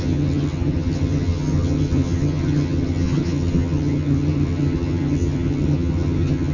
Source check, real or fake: fake